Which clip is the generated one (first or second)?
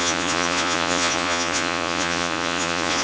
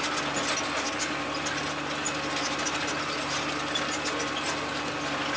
first